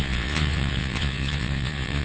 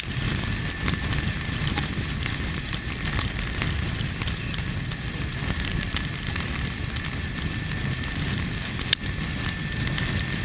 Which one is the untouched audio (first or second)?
second